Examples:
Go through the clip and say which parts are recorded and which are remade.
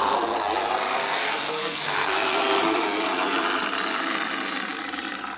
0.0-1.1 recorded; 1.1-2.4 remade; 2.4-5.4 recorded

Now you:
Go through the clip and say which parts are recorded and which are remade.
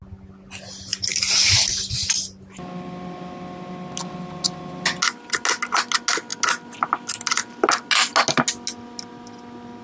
0.0-9.8 recorded